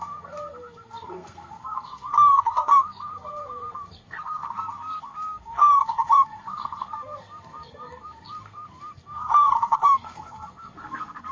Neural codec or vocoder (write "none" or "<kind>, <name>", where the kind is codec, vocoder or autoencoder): codec, SNAC